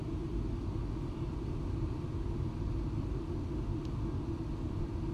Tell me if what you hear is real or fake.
real